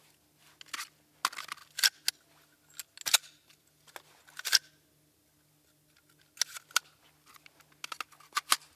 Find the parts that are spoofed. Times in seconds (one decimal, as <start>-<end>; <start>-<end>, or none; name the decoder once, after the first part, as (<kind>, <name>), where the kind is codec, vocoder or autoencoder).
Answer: none